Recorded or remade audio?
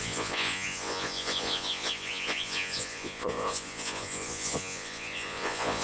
remade